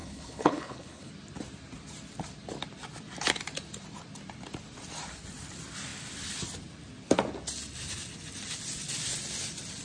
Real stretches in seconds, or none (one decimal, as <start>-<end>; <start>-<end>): 1.1-9.8